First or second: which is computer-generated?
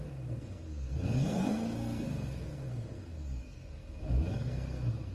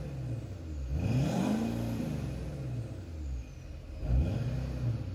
first